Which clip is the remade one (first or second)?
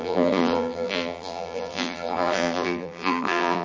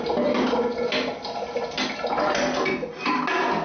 first